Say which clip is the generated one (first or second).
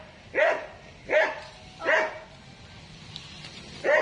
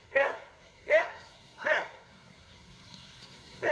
second